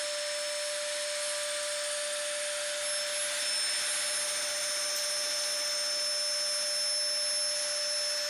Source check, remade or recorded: recorded